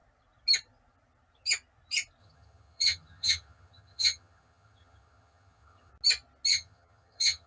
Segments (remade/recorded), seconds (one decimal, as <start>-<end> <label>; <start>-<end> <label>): 0.0-2.2 recorded; 2.2-5.9 remade; 5.9-6.5 recorded; 6.5-7.5 remade